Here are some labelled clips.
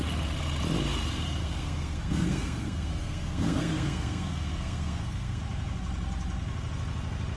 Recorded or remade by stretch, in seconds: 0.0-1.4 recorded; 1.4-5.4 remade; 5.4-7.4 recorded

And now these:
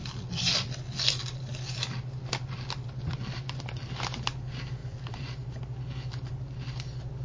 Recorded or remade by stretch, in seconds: 0.0-4.8 recorded; 4.8-5.6 remade; 5.6-7.2 recorded

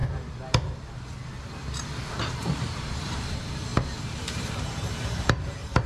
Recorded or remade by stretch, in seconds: 0.0-2.3 recorded; 2.3-5.9 remade